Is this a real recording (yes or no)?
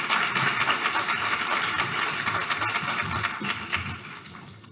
yes